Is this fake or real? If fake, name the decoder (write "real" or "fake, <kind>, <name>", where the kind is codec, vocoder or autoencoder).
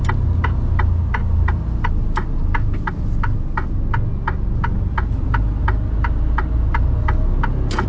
real